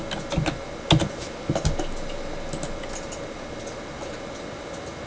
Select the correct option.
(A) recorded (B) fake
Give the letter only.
A